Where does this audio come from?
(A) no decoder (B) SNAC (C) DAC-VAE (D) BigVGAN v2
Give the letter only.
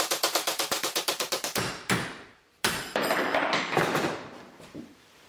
D